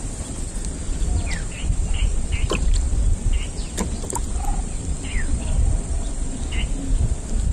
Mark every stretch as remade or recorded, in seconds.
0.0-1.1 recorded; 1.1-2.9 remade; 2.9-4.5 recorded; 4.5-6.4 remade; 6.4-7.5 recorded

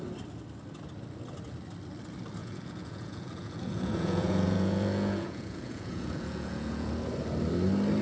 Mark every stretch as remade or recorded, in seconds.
0.0-2.4 recorded; 2.4-6.9 remade; 6.9-8.0 recorded

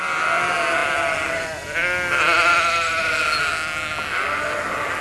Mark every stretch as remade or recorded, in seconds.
0.0-5.0 recorded

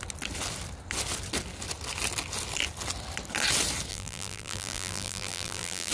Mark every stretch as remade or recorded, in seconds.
0.0-3.9 recorded; 3.9-5.9 remade

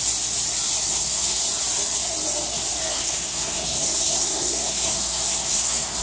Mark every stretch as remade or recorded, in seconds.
0.0-0.9 recorded; 0.9-1.4 remade; 1.4-2.9 recorded; 2.9-6.0 remade

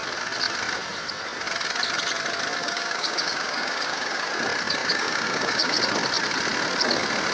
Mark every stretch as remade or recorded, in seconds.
0.0-2.6 recorded; 2.6-4.3 remade; 4.3-4.8 recorded; 4.8-5.8 remade; 5.8-7.3 recorded

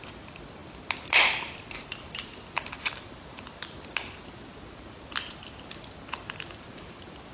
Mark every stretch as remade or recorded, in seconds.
0.0-7.3 recorded